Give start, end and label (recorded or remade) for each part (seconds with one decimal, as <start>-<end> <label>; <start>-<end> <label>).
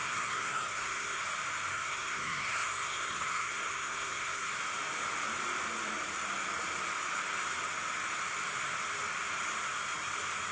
0.0-1.2 remade; 1.2-1.7 recorded; 1.7-4.5 remade; 4.5-10.5 recorded